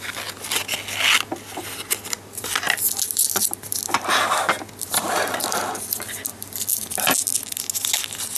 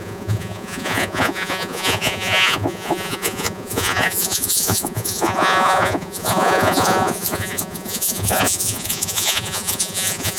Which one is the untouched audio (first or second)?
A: first